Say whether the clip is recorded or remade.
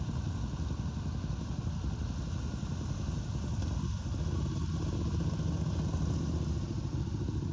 recorded